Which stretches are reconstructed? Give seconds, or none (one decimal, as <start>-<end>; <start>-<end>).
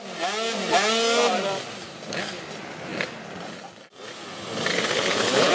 4.7-5.5